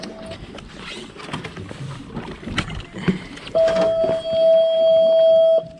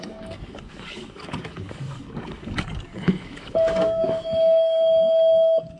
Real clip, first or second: first